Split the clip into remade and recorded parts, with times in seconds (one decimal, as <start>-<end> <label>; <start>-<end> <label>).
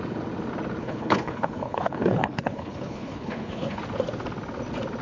0.0-0.8 recorded; 0.8-3.8 remade; 3.8-5.0 recorded